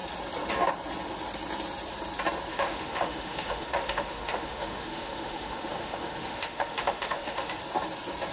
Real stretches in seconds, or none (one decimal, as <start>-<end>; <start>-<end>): 0.0-2.5; 7.5-8.3

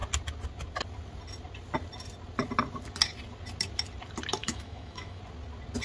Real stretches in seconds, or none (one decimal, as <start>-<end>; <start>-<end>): 0.0-4.4; 5.2-5.8

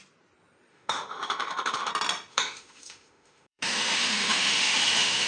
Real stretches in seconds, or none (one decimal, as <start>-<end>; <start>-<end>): 0.0-0.7; 1.9-2.3

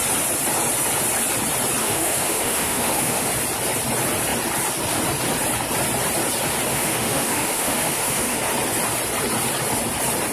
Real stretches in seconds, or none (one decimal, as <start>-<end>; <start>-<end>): 0.0-1.8; 3.3-6.7; 8.4-10.3

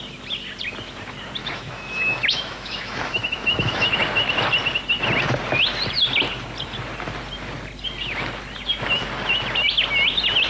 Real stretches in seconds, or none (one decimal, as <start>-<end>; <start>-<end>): 0.0-1.4; 3.9-10.5

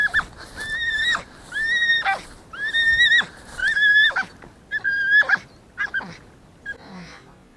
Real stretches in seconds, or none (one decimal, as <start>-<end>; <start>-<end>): 0.0-3.6; 4.3-7.6

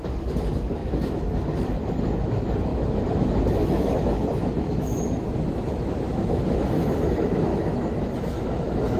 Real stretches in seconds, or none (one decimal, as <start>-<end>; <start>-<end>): none

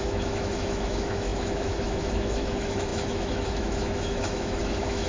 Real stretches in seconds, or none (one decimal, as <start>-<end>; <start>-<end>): none